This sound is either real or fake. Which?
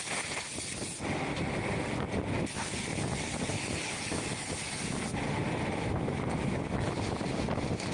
real